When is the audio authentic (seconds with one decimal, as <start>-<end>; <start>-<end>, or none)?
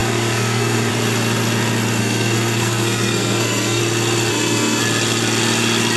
0.9-2.0; 3.8-4.3; 4.8-6.0